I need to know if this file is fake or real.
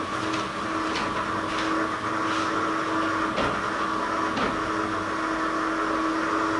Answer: real